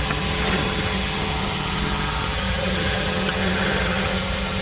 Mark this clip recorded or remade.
remade